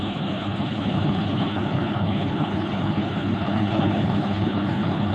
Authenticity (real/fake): fake